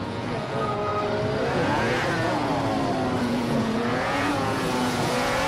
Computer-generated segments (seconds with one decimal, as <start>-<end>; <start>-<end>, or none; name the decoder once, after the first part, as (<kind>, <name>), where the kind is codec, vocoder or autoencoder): 0.0-0.9 (vocoder, Vocos); 1.5-2.5; 3.2-5.5